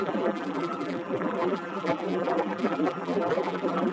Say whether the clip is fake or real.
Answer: fake